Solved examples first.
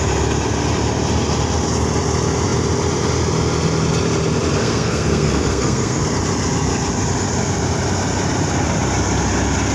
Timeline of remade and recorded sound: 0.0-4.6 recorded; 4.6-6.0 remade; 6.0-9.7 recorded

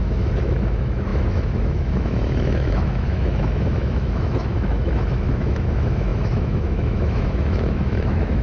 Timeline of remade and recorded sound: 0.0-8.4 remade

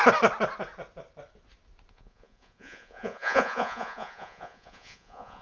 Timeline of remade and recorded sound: 0.0-1.9 recorded; 1.9-5.4 remade

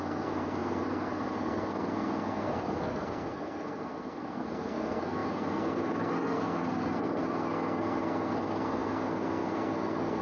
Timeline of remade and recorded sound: 0.0-10.2 remade

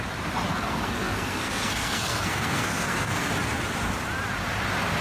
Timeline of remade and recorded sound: 0.0-0.5 recorded; 0.5-3.3 remade; 3.3-5.0 recorded